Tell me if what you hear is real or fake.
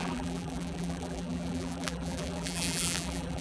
fake